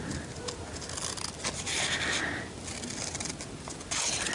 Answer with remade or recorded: recorded